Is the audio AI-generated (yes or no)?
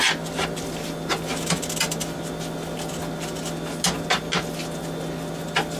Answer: no